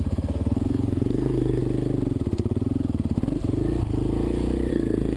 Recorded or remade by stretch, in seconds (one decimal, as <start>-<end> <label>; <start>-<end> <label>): 0.0-1.6 remade; 1.6-4.7 recorded; 4.7-5.2 remade